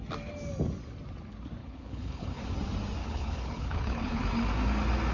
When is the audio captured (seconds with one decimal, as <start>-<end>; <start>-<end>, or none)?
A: 0.0-1.6; 2.4-3.0; 4.2-5.1